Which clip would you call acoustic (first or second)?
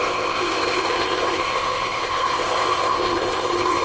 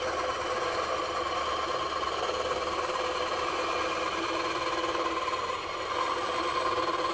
second